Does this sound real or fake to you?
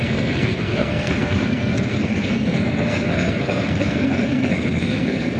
fake